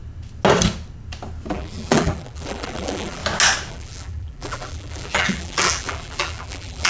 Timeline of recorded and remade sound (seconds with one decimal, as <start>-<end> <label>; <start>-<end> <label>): 0.0-1.5 recorded; 1.5-3.2 remade; 3.2-3.7 recorded; 3.7-6.9 remade